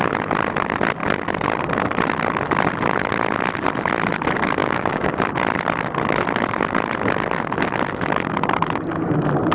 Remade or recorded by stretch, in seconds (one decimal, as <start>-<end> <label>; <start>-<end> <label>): 0.0-4.6 recorded; 4.6-5.1 remade; 5.1-9.5 recorded